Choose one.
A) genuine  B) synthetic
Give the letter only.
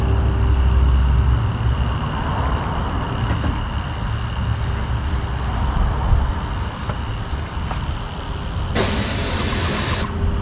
A